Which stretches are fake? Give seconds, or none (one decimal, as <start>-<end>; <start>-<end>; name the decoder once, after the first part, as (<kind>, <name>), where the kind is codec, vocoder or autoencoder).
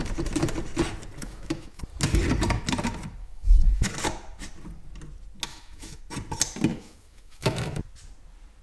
1.2-1.8 (autoencoder, DAC-VAE); 3.2-3.9; 5.5-6.0; 6.7-7.8